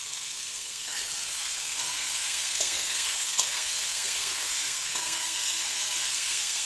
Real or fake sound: fake